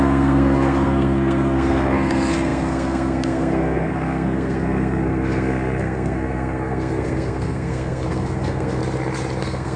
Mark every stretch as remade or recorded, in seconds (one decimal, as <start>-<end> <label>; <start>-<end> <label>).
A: 0.0-8.8 remade; 8.8-9.4 recorded; 9.4-9.8 remade